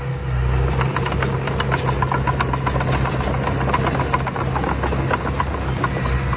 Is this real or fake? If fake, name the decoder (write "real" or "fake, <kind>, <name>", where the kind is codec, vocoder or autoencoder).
real